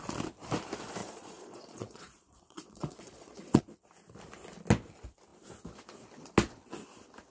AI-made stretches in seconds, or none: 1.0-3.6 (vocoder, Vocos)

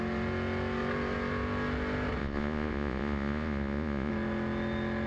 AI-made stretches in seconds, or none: 2.2-4.1 (vocoder, Vocos)